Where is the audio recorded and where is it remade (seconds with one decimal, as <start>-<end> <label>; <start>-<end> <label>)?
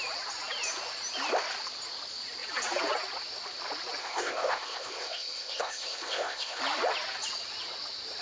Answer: 0.0-4.0 recorded; 4.0-6.6 remade; 6.6-8.2 recorded